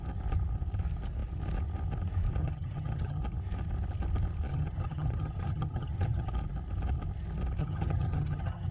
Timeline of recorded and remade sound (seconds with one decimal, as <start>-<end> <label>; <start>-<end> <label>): 0.0-2.4 recorded; 2.4-3.2 remade; 3.2-4.5 recorded; 4.5-6.3 remade; 6.3-7.6 recorded; 7.6-8.7 remade